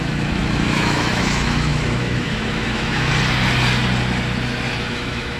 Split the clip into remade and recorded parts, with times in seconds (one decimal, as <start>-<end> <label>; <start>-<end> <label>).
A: 0.0-3.1 remade; 3.1-4.9 recorded; 4.9-5.4 remade